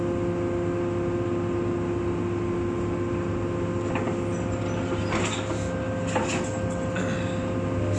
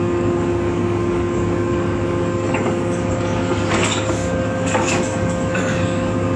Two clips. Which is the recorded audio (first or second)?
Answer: first